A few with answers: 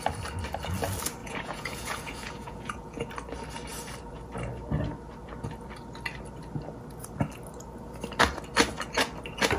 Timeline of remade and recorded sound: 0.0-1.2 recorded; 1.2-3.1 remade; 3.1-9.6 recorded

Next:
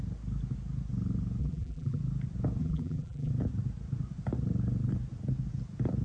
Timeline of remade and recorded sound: 0.0-1.4 recorded; 1.4-2.0 remade; 2.0-2.6 recorded; 2.6-3.3 remade; 3.3-6.0 recorded

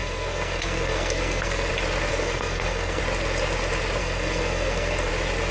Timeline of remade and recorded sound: 0.0-1.7 remade; 1.7-2.1 recorded; 2.1-3.0 remade; 3.0-4.0 recorded; 4.0-5.1 remade; 5.1-5.5 recorded

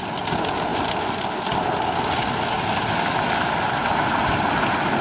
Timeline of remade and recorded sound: 0.0-5.0 recorded

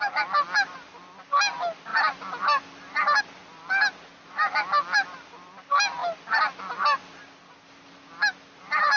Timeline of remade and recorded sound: 0.0-9.0 recorded